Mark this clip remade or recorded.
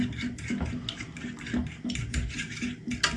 recorded